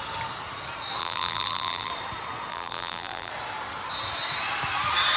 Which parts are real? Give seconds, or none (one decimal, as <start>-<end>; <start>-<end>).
0.0-1.0; 1.9-2.5; 3.3-5.2